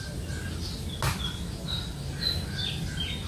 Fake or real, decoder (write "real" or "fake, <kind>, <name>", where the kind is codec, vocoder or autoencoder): real